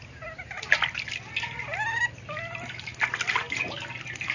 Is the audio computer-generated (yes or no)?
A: no